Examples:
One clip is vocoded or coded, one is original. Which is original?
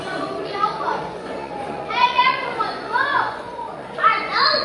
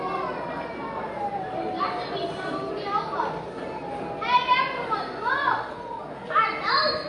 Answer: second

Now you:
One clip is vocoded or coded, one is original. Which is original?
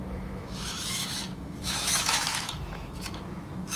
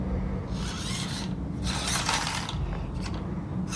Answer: second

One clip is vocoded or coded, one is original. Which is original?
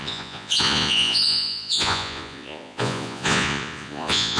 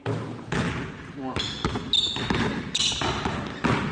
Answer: second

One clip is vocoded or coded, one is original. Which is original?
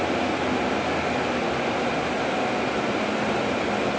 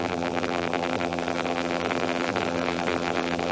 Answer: first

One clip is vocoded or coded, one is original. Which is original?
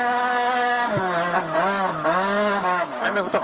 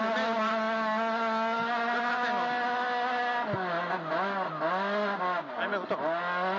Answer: second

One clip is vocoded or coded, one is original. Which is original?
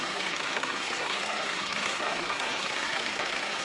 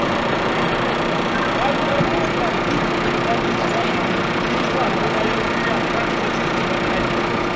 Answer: second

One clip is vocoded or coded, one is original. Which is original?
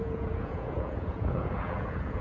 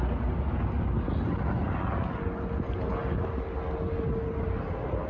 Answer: second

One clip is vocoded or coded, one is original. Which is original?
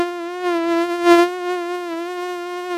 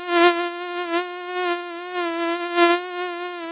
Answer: second